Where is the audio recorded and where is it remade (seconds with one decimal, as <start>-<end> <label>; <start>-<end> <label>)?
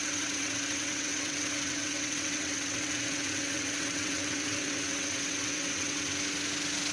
0.0-6.1 remade; 6.1-6.9 recorded